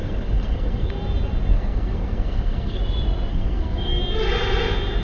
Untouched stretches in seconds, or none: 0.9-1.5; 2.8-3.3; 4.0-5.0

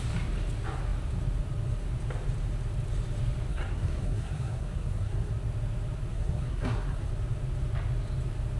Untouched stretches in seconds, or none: 0.0-3.5; 5.3-6.1; 7.1-8.6

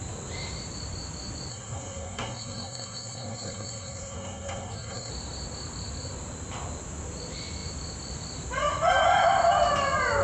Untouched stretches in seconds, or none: 0.0-1.5; 5.1-10.2

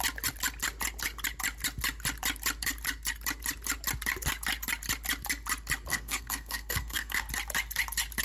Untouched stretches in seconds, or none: 0.0-5.9; 7.2-8.2

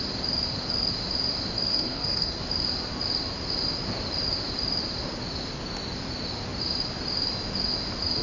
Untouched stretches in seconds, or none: 0.0-1.7; 2.4-8.2

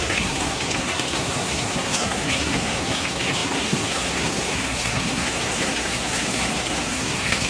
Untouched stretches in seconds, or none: none